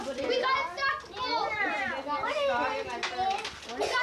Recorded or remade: recorded